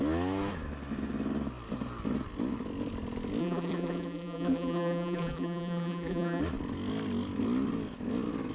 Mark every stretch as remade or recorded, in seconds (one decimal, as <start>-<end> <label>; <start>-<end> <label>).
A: 0.0-3.4 recorded; 3.4-6.4 remade; 6.4-8.5 recorded